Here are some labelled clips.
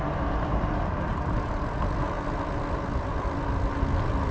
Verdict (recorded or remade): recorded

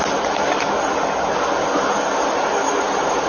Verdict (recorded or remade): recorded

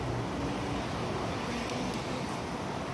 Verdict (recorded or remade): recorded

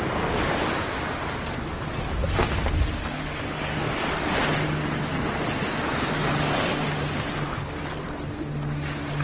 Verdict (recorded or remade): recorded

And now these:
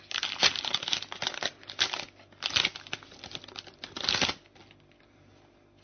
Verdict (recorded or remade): recorded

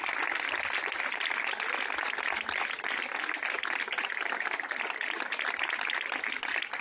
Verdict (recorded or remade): recorded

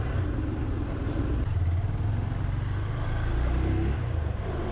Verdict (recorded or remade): recorded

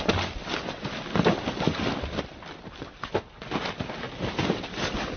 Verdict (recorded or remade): recorded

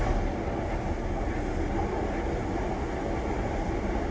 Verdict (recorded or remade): recorded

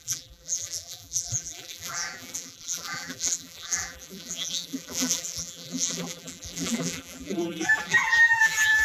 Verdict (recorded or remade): remade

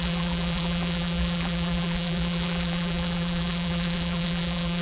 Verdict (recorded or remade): remade